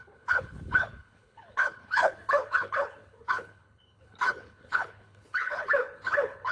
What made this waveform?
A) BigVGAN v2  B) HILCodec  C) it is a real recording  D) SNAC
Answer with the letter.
B